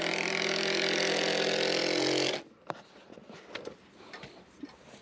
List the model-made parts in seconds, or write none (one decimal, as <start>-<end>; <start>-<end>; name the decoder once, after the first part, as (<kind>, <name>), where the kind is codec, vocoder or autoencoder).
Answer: none